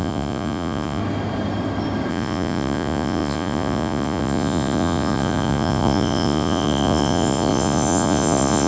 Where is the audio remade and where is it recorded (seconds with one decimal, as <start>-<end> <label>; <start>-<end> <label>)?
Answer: 0.0-1.0 remade; 1.0-2.1 recorded; 2.1-8.7 remade